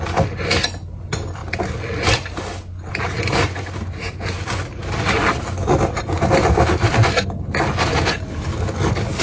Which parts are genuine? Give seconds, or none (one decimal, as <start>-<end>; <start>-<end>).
0.0-9.2